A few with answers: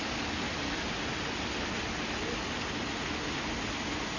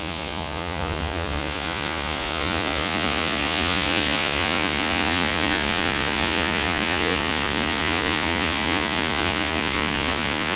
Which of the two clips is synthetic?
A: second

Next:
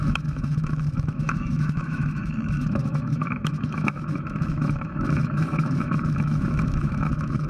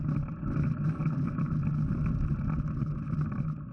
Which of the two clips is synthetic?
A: first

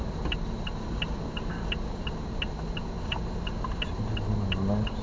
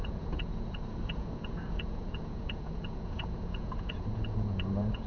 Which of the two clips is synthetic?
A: second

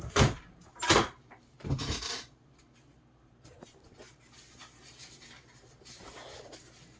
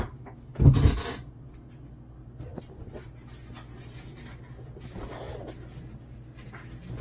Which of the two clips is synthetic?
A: first